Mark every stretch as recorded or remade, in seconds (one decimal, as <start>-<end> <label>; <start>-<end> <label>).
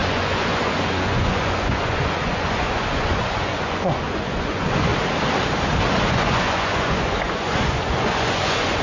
0.0-4.9 remade; 4.9-6.0 recorded; 6.0-8.8 remade